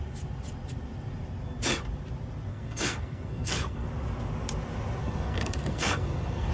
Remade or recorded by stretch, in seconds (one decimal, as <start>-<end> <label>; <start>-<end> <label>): 0.0-2.5 recorded; 2.5-3.9 remade; 3.9-5.0 recorded; 5.0-6.5 remade